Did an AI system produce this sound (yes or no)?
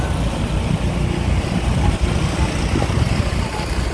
no